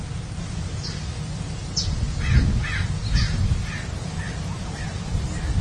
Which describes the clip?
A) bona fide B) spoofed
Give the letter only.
A